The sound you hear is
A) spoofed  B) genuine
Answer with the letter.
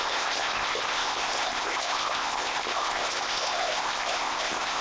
A